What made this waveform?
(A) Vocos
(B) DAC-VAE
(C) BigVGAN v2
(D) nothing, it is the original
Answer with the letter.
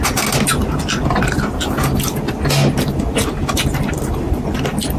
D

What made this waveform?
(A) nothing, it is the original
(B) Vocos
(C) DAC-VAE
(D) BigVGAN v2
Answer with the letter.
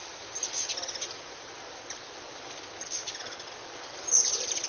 A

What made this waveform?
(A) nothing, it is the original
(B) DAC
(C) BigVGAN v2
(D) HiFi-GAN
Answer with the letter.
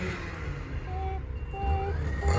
A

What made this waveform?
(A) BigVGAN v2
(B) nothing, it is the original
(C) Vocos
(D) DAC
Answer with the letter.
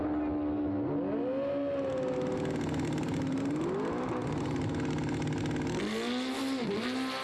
B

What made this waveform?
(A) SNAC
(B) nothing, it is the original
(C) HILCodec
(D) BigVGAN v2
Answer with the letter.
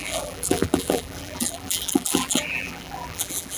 D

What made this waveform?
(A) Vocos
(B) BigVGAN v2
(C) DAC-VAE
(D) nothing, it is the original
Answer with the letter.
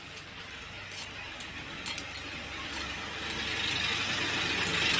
D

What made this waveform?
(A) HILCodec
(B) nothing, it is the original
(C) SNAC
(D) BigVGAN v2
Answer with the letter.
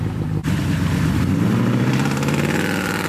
D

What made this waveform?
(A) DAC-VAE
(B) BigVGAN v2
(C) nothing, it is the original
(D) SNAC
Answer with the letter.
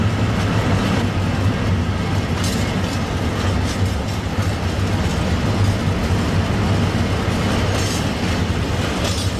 C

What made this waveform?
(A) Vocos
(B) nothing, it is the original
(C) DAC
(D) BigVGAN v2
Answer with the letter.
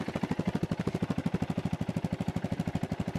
B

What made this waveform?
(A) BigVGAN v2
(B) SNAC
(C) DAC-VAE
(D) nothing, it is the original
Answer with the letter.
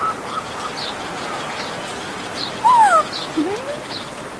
D